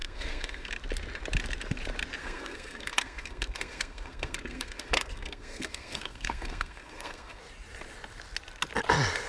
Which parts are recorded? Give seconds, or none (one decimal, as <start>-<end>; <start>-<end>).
0.7-2.2; 7.4-9.3